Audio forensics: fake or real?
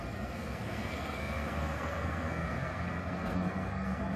fake